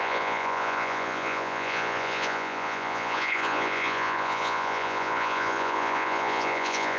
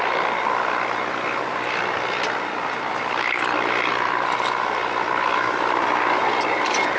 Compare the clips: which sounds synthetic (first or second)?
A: first